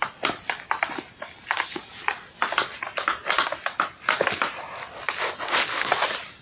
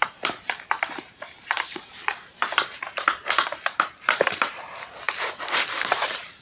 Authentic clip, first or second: first